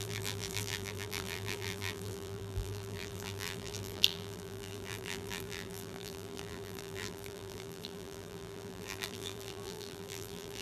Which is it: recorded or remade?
remade